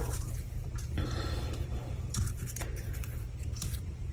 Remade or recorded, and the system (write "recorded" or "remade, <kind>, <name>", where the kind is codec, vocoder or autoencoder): remade, vocoder, BigVGAN v2